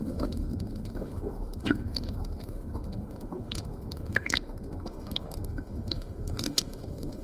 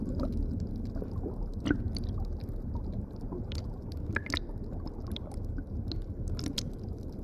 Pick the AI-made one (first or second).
first